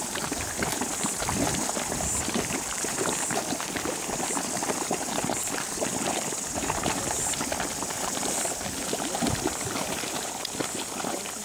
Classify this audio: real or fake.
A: fake